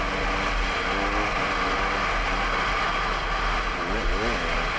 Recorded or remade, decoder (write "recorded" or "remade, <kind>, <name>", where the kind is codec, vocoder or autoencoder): recorded